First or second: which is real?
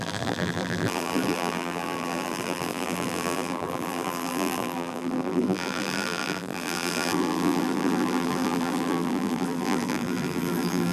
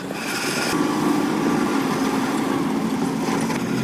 second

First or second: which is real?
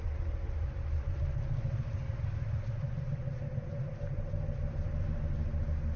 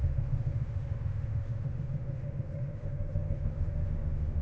first